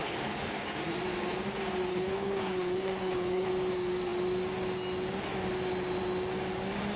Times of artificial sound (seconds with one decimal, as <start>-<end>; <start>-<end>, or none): 1.9-3.5